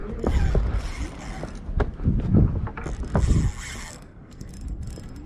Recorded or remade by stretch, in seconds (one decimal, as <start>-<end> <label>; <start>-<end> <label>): 0.0-3.8 recorded; 3.8-4.5 remade; 4.5-5.3 recorded